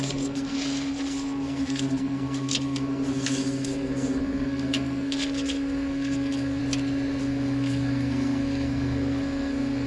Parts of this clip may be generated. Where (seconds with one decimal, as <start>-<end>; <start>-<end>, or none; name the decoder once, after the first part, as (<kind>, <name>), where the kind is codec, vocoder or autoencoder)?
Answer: 0.0-6.6 (codec, SNAC); 7.2-9.9